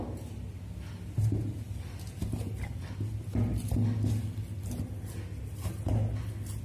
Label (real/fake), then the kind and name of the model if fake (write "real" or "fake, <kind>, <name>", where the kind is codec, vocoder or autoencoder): real